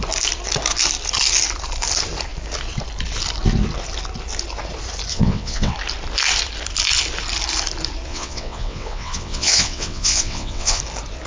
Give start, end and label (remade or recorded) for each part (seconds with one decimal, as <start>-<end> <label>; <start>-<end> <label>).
0.0-5.1 recorded; 5.1-5.7 remade; 5.7-8.1 recorded; 8.1-10.8 remade; 10.8-11.3 recorded